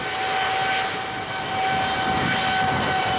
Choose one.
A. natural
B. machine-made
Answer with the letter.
A